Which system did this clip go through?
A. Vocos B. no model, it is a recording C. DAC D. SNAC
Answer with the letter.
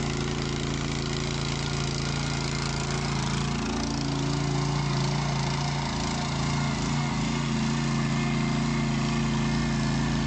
B